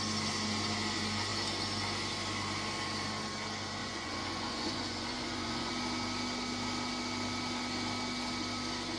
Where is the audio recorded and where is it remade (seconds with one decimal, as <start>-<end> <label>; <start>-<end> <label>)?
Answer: 0.0-3.8 recorded; 3.8-5.7 remade; 5.7-9.0 recorded